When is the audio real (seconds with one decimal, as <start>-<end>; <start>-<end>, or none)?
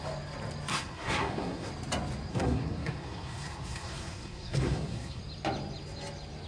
0.0-0.7; 1.7-2.3; 5.2-6.5